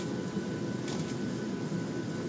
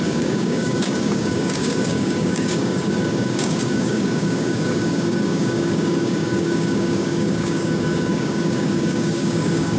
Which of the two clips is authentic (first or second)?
first